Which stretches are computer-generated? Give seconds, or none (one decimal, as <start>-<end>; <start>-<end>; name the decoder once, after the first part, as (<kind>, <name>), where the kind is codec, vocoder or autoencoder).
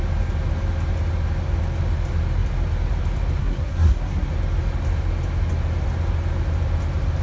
3.4-4.3 (codec, SNAC)